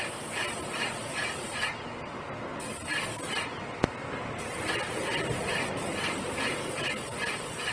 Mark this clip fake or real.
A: real